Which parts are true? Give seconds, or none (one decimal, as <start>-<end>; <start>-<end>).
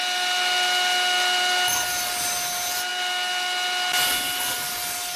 0.0-5.2